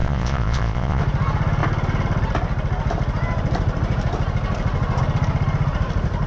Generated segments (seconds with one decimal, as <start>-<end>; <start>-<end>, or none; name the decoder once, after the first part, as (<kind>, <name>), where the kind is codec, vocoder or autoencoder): 0.0-1.0 (vocoder, Vocos)